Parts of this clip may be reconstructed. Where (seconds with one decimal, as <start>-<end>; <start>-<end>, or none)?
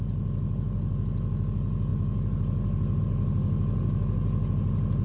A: none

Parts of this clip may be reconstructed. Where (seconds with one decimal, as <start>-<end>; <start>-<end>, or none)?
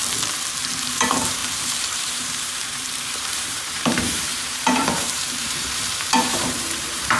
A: 0.6-7.2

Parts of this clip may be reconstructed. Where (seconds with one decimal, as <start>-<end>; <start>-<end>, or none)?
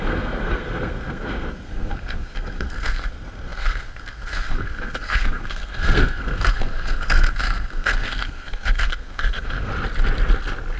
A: 0.0-9.7